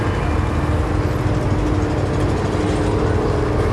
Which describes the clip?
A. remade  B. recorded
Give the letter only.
B